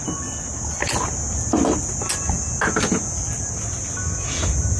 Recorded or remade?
recorded